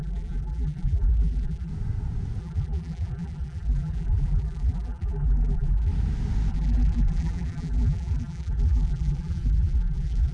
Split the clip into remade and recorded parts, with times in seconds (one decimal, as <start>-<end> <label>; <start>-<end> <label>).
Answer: 0.0-1.7 remade; 1.7-2.4 recorded; 2.4-5.9 remade; 5.9-6.5 recorded; 6.5-10.3 remade